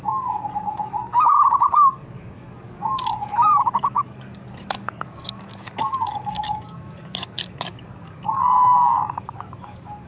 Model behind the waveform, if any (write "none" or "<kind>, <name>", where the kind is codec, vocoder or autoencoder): codec, DAC